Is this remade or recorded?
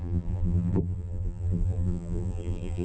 remade